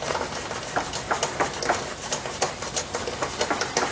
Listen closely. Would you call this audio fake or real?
real